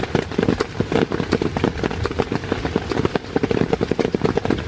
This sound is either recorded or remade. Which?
recorded